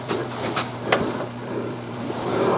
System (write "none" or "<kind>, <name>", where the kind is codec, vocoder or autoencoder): vocoder, BigVGAN v2